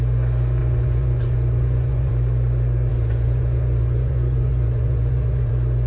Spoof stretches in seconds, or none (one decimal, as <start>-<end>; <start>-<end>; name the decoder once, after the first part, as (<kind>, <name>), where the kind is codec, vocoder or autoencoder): 0.6-2.1 (vocoder, Vocos); 2.9-5.5